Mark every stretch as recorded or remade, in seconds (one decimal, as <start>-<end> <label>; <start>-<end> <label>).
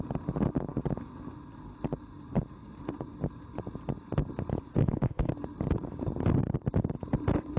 0.0-4.7 recorded; 4.7-5.3 remade; 5.3-7.6 recorded